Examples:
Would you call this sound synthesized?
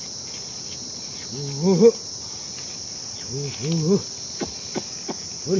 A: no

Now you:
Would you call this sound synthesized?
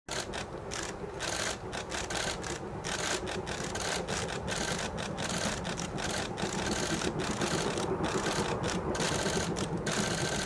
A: no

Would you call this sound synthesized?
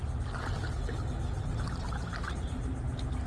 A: no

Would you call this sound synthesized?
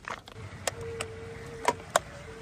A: no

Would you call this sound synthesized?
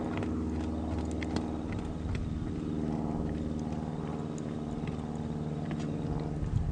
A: no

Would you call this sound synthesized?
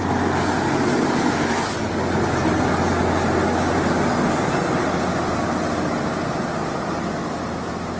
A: no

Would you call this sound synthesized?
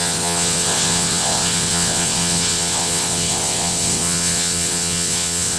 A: yes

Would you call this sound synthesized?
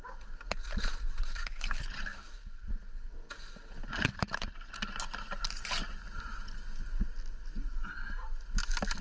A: no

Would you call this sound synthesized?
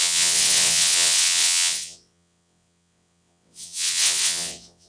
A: yes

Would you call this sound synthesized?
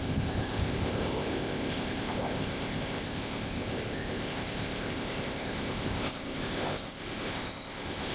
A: yes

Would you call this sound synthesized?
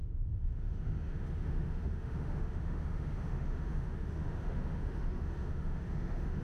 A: yes